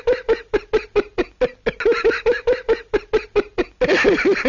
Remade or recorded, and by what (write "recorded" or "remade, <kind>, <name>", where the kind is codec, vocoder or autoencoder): recorded